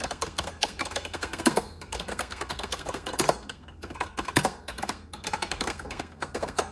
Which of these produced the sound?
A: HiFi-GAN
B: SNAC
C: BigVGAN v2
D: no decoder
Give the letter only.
B